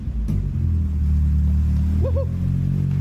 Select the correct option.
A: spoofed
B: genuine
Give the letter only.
B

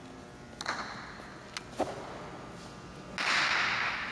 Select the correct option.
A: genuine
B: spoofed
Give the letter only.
A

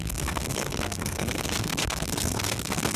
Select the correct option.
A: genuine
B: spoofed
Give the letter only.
B